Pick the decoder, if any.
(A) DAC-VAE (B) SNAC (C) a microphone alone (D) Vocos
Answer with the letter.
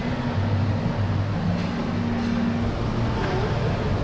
C